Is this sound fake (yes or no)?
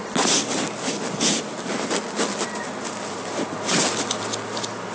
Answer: no